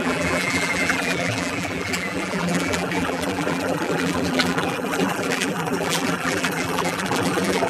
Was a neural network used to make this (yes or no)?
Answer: yes